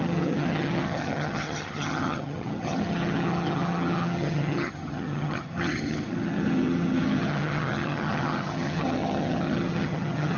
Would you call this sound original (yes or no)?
no